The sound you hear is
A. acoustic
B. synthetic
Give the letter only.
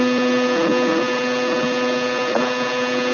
A